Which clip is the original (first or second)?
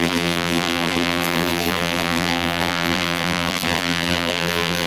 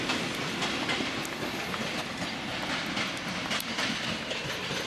second